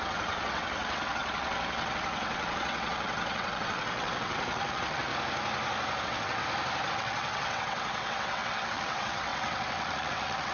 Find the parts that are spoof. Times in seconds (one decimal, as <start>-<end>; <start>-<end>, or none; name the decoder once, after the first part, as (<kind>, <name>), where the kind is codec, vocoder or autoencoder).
0.0-5.1 (vocoder, WaveNeXt); 6.0-6.4; 6.9-10.5